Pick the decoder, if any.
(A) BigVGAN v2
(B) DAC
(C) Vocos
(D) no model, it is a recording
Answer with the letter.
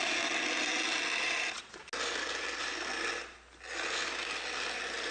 D